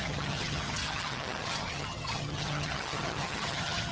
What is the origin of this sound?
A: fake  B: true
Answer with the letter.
A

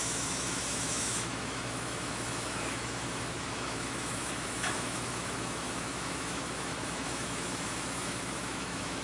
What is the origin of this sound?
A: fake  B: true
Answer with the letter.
A